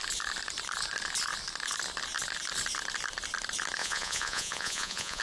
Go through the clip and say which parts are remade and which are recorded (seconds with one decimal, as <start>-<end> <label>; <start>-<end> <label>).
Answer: 0.0-3.8 recorded; 3.8-5.2 remade